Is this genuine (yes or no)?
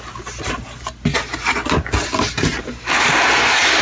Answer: yes